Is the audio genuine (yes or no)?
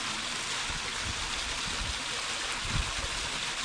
yes